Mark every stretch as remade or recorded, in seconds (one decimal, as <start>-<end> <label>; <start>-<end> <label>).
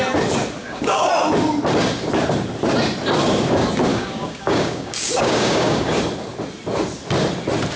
0.0-0.6 recorded; 0.6-1.1 remade; 1.1-3.9 recorded; 3.9-6.0 remade; 6.0-7.8 recorded